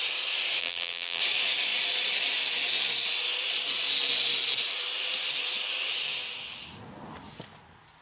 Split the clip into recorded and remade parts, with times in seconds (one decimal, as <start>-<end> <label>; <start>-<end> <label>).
0.0-0.6 recorded; 0.6-1.2 remade; 1.2-8.0 recorded